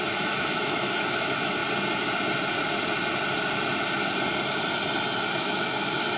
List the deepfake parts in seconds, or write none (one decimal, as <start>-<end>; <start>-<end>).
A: 0.0-1.6; 5.3-6.2